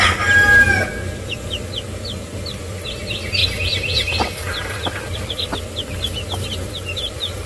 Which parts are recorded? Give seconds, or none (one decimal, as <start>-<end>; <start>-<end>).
0.0-3.4; 5.3-7.5